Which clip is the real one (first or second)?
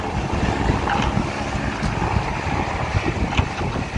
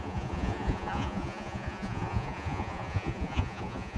first